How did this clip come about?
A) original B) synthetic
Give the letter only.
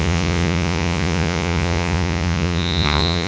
B